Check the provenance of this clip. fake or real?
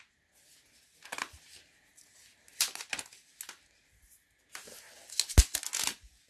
real